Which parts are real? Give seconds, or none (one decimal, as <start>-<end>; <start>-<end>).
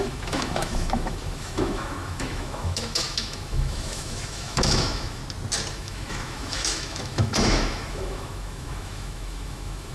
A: 5.2-5.7